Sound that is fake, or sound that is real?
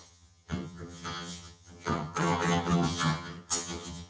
fake